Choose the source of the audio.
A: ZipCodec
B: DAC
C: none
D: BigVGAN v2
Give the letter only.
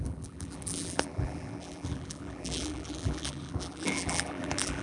D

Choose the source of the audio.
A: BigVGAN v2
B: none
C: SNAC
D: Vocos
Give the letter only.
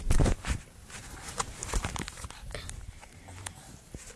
A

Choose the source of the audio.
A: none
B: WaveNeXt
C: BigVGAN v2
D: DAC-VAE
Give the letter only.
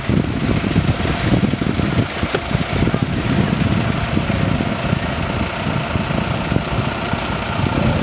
A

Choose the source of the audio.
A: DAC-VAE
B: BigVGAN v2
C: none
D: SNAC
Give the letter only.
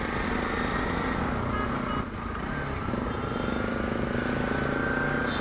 C